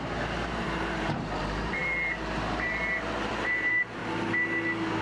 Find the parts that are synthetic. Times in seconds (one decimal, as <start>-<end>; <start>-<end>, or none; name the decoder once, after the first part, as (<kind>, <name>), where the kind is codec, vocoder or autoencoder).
0.0-4.0 (vocoder, BigVGAN v2)